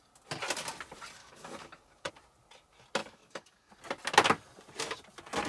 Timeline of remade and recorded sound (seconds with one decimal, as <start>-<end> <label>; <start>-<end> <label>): 0.0-1.2 recorded; 1.2-2.1 remade; 2.1-3.0 recorded; 3.0-3.7 remade; 3.7-5.5 recorded